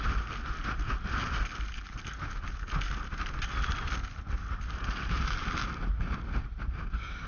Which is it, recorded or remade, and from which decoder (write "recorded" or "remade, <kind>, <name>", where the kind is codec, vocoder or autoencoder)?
recorded